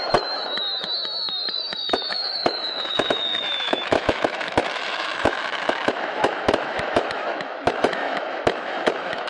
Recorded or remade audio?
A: remade